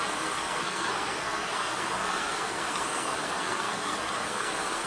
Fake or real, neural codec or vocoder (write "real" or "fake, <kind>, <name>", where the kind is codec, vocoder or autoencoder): fake, codec, SNAC